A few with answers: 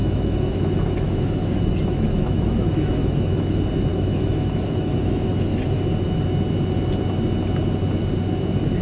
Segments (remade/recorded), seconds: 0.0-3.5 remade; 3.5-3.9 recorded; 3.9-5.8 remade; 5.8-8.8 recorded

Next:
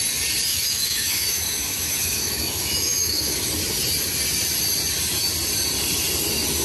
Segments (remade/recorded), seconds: 0.0-0.5 recorded; 0.5-3.5 remade; 3.5-6.6 recorded

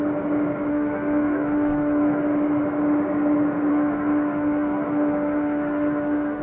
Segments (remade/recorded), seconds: 0.0-0.7 recorded; 0.7-2.2 remade; 2.2-3.7 recorded; 3.7-6.4 remade

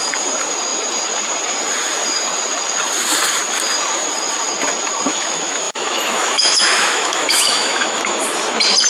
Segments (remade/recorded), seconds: 0.0-5.1 recorded; 5.1-8.2 remade; 8.2-8.9 recorded

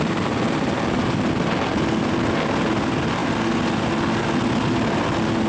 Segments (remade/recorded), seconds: 0.0-5.5 recorded

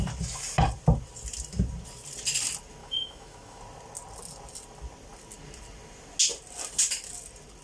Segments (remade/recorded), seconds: 0.0-2.8 recorded; 2.8-3.6 remade; 3.6-7.6 recorded

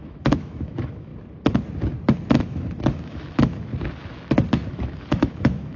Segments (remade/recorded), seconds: 0.0-1.1 remade; 1.1-2.4 recorded; 2.4-3.7 remade; 3.7-4.7 recorded; 4.7-5.8 remade